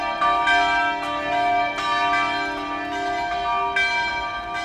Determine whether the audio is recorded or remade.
recorded